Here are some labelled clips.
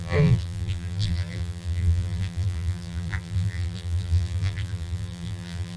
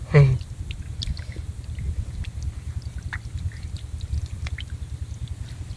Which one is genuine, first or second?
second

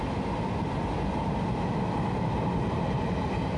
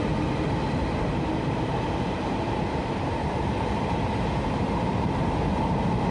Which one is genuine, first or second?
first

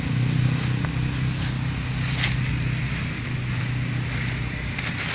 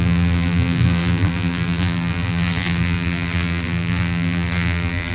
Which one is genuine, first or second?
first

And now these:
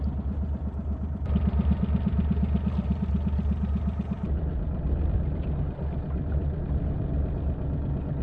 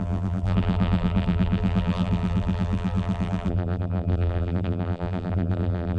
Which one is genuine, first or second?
first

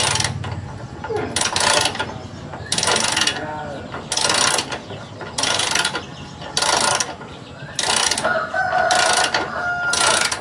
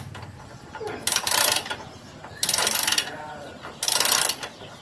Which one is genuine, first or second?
first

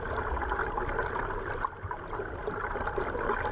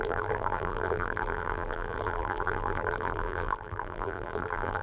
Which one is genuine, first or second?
first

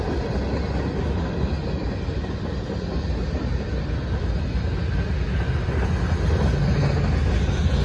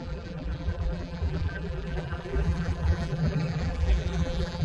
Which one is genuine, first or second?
first